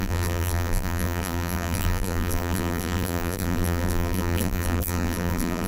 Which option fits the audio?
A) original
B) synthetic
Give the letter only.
B